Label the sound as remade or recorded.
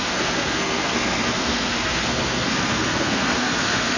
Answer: remade